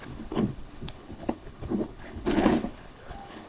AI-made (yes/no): yes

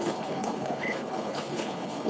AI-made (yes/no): yes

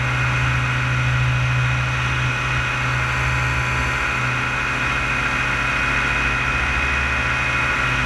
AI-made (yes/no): no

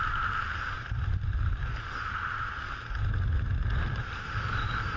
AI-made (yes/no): no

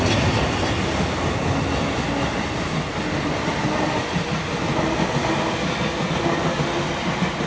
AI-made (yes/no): no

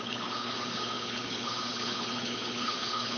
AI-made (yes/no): yes